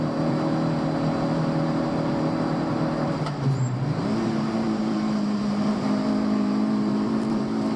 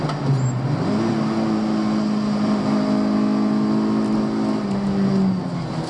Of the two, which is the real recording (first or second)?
second